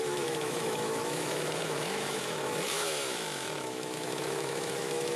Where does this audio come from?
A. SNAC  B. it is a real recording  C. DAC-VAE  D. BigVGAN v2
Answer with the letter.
C